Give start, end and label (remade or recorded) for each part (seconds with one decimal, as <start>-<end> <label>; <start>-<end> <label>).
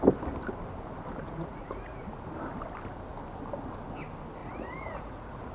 0.0-1.2 recorded; 1.2-2.0 remade; 2.0-4.4 recorded; 4.4-5.5 remade